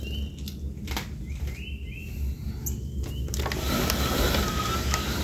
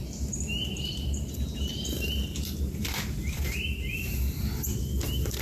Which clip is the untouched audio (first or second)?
first